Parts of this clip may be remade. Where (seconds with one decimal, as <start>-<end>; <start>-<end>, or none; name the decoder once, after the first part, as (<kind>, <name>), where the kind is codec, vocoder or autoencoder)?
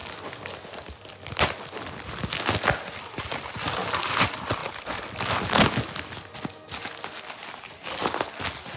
none